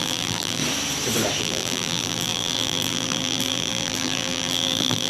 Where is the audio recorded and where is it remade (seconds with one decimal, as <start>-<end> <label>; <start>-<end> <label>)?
0.0-0.6 remade; 0.6-1.4 recorded; 1.4-5.1 remade